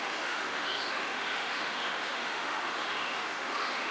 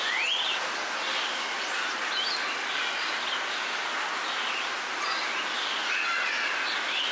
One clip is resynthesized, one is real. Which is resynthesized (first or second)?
first